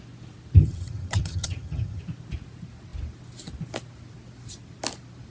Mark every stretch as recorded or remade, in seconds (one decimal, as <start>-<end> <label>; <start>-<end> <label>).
0.0-0.6 recorded; 0.6-2.0 remade; 2.0-5.3 recorded